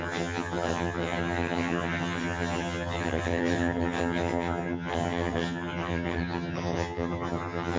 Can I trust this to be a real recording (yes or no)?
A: no